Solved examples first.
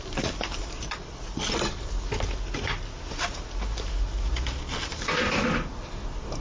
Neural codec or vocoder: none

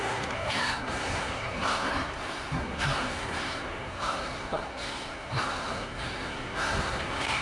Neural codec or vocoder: codec, SNAC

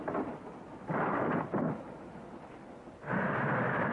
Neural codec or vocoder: none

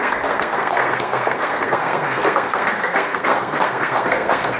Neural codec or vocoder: codec, SNAC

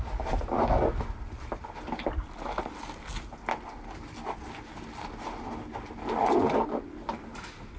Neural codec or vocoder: none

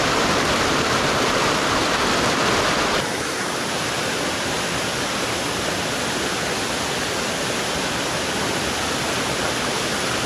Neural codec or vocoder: none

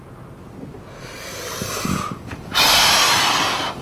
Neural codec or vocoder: none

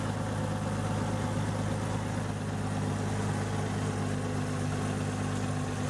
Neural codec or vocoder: none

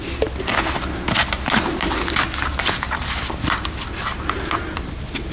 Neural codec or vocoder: none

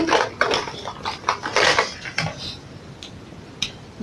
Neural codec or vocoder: none